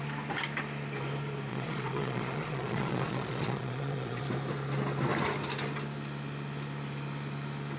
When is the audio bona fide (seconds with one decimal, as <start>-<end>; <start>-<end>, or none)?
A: 0.0-1.5; 4.2-7.8